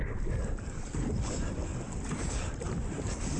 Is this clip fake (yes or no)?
no